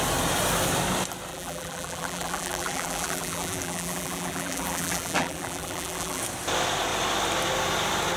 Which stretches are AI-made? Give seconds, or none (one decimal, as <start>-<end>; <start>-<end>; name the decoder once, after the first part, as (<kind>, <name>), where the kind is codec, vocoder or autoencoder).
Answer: 1.3-6.2 (vocoder, BigVGAN v2)